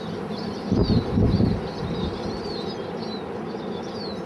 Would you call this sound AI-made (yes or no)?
no